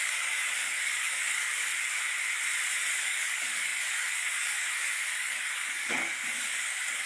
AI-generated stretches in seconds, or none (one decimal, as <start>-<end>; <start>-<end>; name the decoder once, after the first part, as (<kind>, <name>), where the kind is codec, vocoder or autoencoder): 0.0-1.7 (codec, DAC); 2.9-7.1